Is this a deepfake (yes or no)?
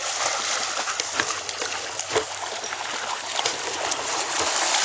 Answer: no